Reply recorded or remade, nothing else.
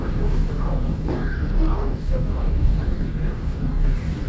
remade